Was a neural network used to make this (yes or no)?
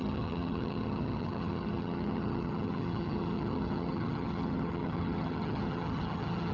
yes